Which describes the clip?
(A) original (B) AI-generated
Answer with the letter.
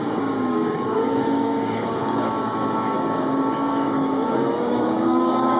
B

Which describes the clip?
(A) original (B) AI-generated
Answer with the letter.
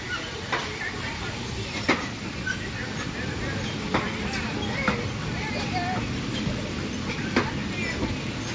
A